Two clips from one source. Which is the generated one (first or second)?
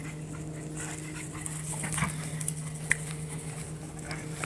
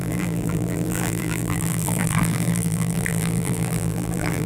second